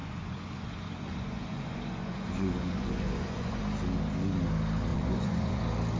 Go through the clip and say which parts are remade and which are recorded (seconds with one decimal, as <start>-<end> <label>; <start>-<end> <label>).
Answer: 0.0-3.6 remade; 3.6-4.9 recorded; 4.9-5.6 remade; 5.6-6.0 recorded